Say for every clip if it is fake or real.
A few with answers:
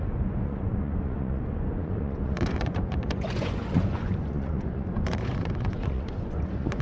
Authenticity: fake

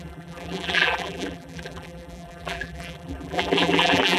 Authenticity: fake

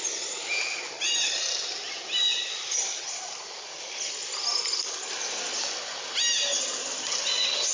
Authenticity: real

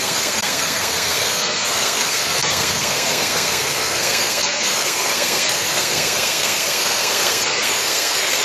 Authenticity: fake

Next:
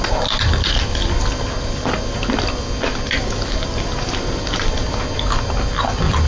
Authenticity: real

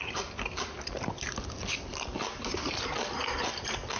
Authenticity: fake